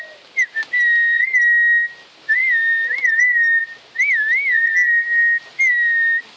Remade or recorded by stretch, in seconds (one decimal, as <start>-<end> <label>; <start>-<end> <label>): 0.0-6.4 recorded